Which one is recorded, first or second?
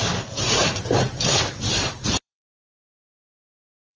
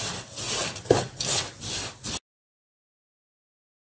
second